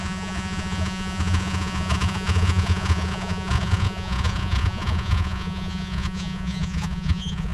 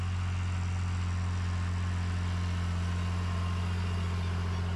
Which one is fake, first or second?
first